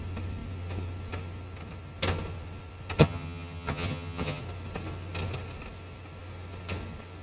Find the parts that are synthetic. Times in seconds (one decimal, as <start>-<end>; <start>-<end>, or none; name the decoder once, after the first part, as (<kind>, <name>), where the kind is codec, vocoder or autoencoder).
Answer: 3.0-4.4 (vocoder, HiFi-GAN)